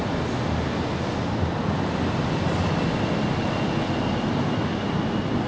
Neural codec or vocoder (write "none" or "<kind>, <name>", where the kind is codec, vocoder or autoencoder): none